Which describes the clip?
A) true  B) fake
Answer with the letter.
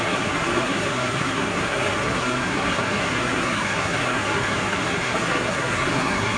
B